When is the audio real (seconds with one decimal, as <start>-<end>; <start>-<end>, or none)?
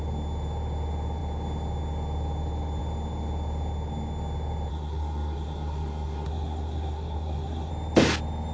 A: 0.0-4.7; 7.7-8.5